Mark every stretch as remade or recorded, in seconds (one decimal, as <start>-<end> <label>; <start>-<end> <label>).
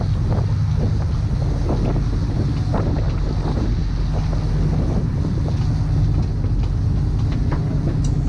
0.0-8.3 recorded